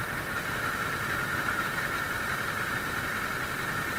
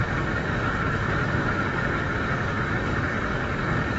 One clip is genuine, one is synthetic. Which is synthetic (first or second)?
second